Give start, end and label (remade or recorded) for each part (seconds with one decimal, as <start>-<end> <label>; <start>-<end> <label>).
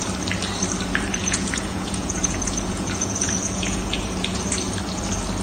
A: 0.0-1.2 recorded; 1.2-4.4 remade; 4.4-5.4 recorded